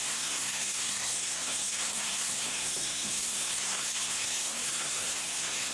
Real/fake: fake